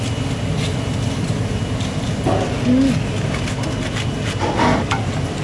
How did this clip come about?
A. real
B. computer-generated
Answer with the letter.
A